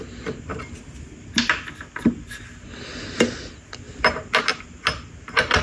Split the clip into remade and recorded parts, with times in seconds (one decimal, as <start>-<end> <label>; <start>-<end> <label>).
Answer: 0.0-5.6 recorded